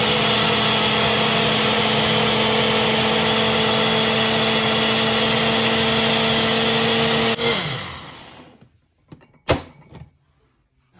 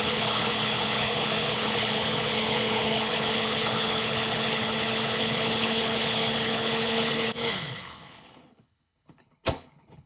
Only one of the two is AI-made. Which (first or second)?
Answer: second